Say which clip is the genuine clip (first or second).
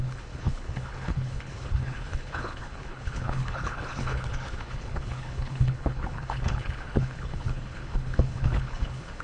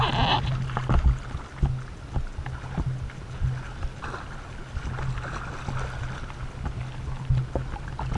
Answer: second